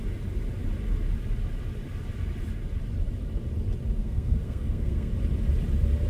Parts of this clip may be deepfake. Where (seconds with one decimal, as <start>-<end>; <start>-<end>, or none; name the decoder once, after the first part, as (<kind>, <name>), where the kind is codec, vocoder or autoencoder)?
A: 4.0-5.1 (codec, SNAC)